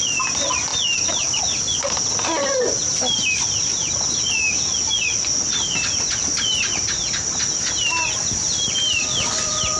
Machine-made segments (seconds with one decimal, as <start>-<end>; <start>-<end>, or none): none